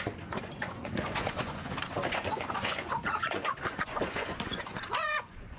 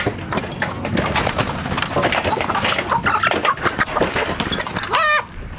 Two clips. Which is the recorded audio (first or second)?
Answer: second